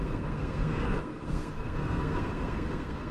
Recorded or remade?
remade